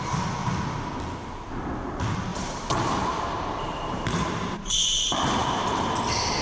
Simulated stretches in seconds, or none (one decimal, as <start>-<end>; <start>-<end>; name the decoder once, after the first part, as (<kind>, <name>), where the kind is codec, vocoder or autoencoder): 2.3-5.9 (vocoder, BigVGAN v2)